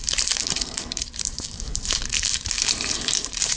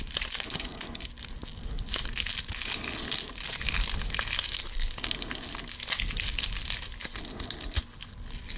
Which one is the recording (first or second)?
second